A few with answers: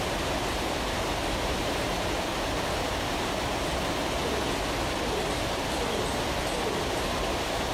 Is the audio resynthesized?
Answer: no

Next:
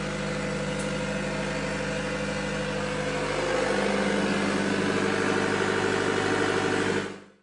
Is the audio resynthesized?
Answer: no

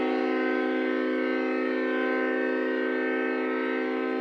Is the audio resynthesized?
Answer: no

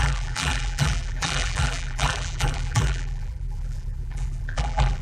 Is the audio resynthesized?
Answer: yes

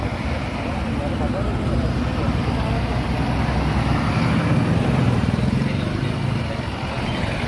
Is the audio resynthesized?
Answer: no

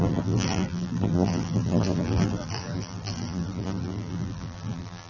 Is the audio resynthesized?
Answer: yes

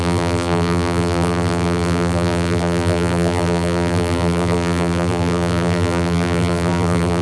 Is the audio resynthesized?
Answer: yes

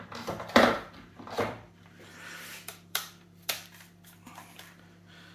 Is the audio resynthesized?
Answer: yes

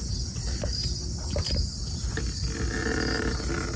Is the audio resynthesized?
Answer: no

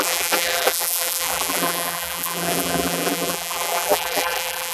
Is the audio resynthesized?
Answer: yes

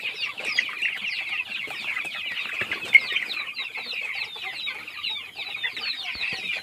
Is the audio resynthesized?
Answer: no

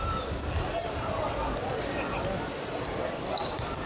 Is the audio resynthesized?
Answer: yes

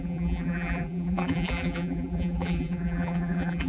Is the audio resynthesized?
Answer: yes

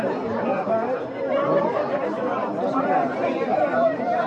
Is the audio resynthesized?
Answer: yes